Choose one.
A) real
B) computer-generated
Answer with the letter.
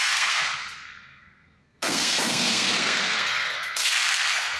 B